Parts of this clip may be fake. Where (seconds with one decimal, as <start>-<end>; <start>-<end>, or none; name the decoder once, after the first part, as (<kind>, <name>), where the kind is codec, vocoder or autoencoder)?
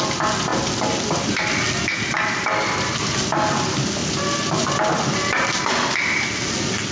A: none